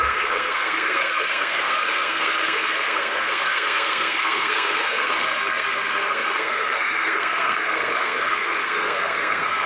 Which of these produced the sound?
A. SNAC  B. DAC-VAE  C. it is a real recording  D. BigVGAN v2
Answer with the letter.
A